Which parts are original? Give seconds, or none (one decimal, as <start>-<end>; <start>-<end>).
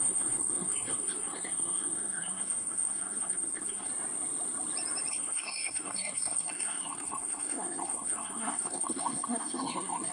3.9-5.1